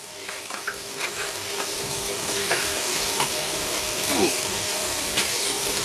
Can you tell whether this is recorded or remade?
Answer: remade